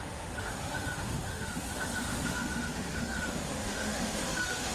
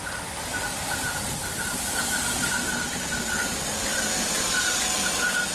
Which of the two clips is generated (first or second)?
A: first